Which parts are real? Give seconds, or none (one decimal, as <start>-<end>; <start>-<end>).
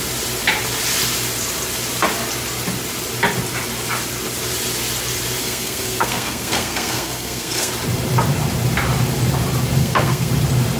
0.0-5.4; 7.7-9.8; 10.3-10.8